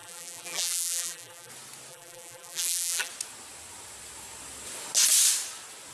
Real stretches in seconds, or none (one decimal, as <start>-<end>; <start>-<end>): 1.5-1.9; 3.1-5.9